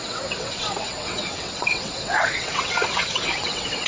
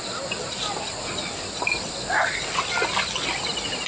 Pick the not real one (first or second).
first